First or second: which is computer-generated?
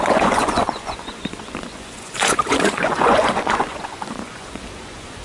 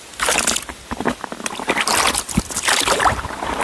first